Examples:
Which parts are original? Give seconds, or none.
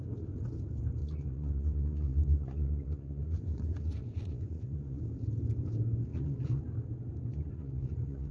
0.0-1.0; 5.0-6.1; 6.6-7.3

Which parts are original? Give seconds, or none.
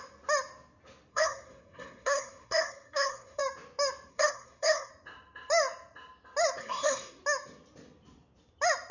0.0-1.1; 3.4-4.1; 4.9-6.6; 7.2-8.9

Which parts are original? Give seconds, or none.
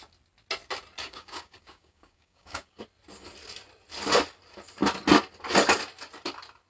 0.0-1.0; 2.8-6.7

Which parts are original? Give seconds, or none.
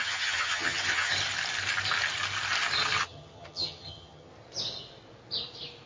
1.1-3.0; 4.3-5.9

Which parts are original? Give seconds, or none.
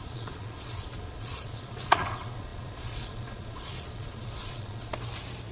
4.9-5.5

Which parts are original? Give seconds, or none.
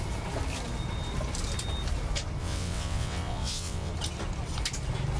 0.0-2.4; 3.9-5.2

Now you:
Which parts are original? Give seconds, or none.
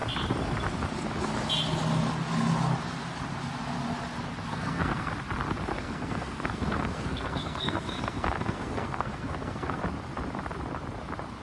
0.0-4.5; 5.1-5.7; 9.8-11.4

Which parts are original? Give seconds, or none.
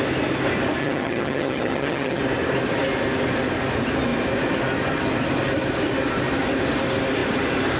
0.0-0.8; 2.2-7.8